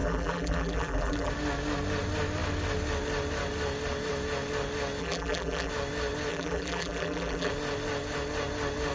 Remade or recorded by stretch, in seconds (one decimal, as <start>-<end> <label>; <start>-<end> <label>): 0.0-1.3 remade; 1.3-5.0 recorded; 5.0-5.7 remade; 5.7-6.3 recorded; 6.3-7.5 remade; 7.5-8.9 recorded